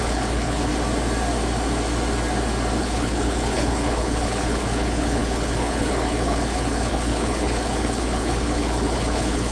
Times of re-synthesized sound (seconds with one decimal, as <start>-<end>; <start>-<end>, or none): 0.0-0.7; 2.8-9.5